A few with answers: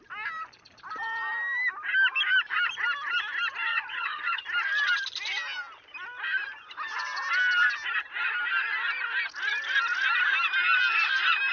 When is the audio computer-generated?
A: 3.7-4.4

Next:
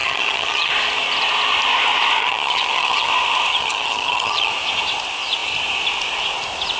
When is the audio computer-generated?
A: 0.0-0.7; 2.2-3.1; 3.5-4.5